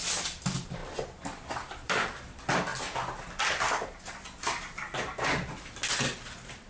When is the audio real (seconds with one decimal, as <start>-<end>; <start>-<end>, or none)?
0.8-1.5; 2.7-5.5